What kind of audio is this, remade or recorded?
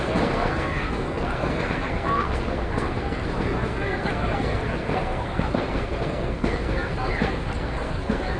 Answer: remade